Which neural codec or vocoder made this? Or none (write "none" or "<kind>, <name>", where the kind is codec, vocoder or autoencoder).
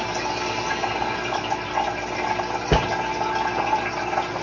none